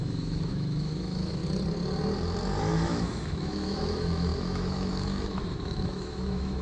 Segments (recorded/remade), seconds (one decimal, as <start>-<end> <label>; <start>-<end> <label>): 0.0-1.4 remade; 1.4-2.7 recorded; 2.7-6.6 remade